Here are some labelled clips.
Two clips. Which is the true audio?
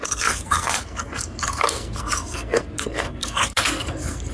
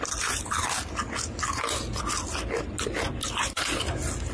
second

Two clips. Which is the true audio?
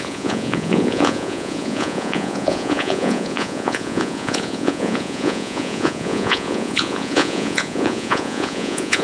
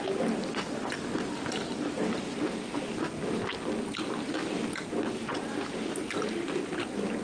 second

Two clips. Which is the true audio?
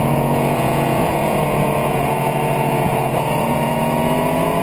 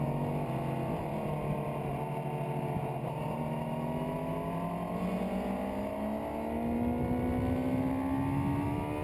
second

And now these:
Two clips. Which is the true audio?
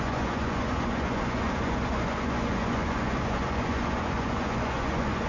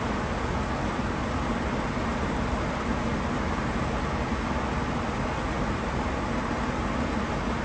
second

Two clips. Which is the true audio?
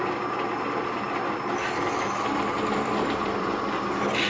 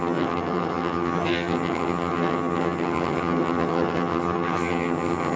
first